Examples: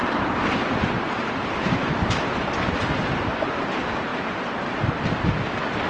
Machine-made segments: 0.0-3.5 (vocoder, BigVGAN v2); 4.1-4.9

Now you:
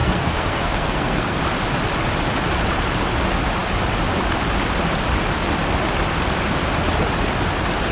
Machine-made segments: 0.0-1.4 (codec, SNAC)